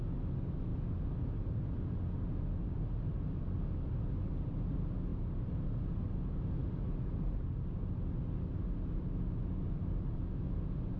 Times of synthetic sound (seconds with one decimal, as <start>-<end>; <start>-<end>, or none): none